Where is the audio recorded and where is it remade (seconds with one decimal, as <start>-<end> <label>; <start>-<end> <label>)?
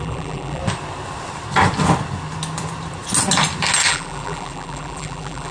0.0-0.6 remade; 0.6-3.9 recorded; 3.9-5.5 remade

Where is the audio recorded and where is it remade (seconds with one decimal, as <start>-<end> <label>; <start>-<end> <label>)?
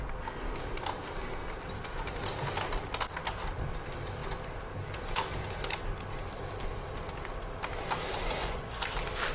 0.0-8.4 recorded; 8.4-8.9 remade; 8.9-9.3 recorded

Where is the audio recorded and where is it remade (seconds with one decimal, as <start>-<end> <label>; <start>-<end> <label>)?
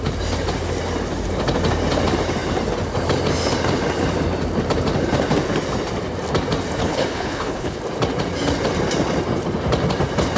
0.0-6.8 recorded; 6.8-7.8 remade; 7.8-10.4 recorded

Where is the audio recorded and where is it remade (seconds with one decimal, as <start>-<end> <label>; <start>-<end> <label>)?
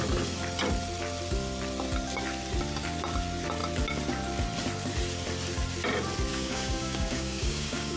0.0-6.3 recorded; 6.3-8.0 remade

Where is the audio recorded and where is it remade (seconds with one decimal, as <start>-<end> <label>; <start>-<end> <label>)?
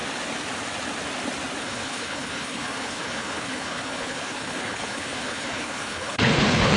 0.0-1.6 recorded; 1.6-6.8 remade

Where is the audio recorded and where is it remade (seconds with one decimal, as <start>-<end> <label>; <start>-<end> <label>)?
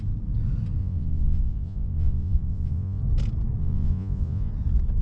0.0-0.8 recorded; 0.8-3.0 remade; 3.0-3.6 recorded; 3.6-4.5 remade; 4.5-5.0 recorded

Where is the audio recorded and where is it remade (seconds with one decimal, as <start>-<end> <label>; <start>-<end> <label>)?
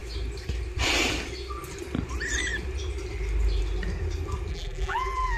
0.0-4.5 recorded; 4.5-5.4 remade